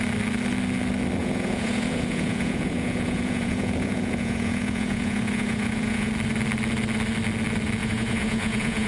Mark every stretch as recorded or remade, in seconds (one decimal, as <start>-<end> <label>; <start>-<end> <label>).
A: 0.0-1.2 recorded; 1.2-6.1 remade; 6.1-7.8 recorded; 7.8-8.9 remade